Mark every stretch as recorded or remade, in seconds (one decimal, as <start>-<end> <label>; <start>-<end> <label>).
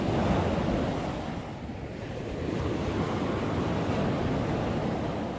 0.0-1.7 recorded; 1.7-2.5 remade; 2.5-5.4 recorded